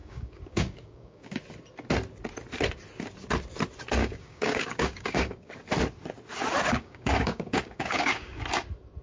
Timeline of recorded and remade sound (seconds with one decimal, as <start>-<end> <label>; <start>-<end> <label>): 0.0-1.3 remade; 1.3-4.0 recorded; 4.0-5.5 remade; 5.5-6.7 recorded; 6.7-8.4 remade; 8.4-9.0 recorded